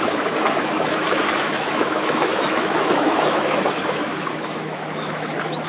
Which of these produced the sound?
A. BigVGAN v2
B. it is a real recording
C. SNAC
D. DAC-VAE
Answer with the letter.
D